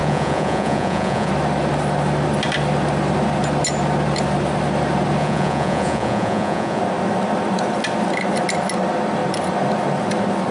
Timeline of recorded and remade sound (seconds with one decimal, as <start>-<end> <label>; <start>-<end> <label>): 0.0-1.3 remade; 1.3-5.2 recorded; 5.2-6.8 remade; 6.8-10.5 recorded